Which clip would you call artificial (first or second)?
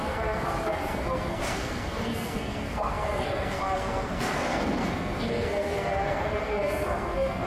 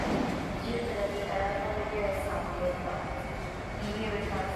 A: first